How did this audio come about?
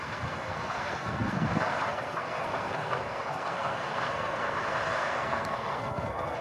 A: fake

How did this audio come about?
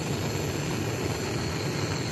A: real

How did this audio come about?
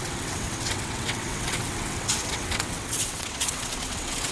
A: fake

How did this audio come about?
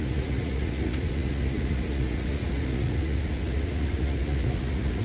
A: fake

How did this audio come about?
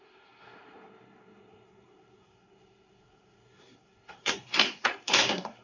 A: fake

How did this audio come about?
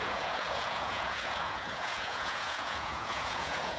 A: fake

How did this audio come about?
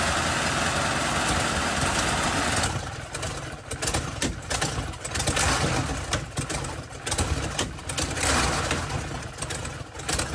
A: real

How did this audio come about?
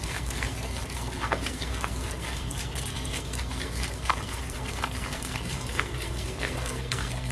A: fake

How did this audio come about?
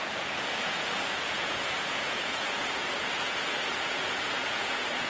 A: fake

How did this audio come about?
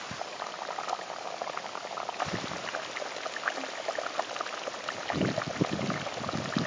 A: real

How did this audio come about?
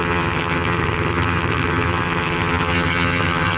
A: fake